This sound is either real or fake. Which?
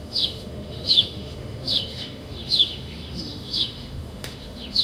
fake